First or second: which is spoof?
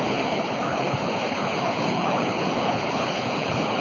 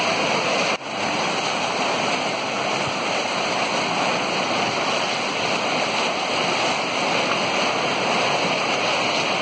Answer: first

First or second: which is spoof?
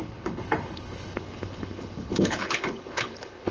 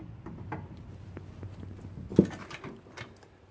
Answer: first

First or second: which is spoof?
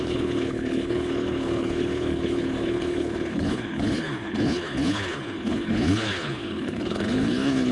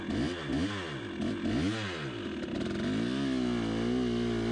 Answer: first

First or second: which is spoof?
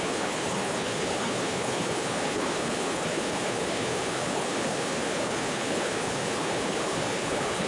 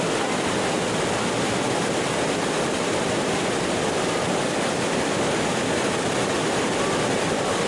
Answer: first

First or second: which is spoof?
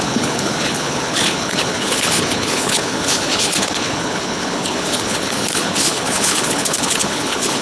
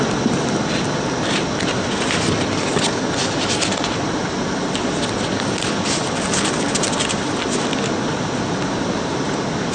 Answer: first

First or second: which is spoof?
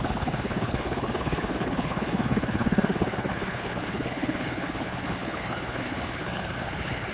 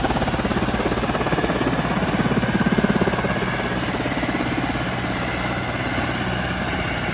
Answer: first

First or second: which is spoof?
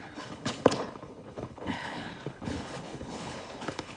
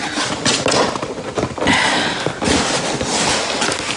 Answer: first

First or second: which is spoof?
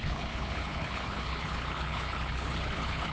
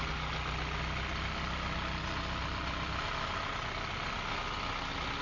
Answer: first